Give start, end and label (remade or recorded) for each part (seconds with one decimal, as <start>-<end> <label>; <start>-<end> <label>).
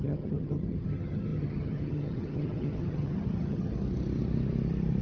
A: 0.0-3.7 remade; 3.7-5.0 recorded